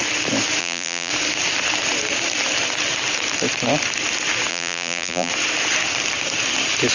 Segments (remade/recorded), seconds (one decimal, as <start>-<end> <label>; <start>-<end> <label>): 0.0-0.6 recorded; 0.6-1.1 remade; 1.1-4.5 recorded; 4.5-5.3 remade; 5.3-6.9 recorded